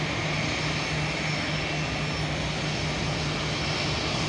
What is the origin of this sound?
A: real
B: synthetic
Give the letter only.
A